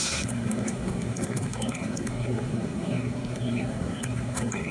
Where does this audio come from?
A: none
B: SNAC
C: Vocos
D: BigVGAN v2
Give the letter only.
B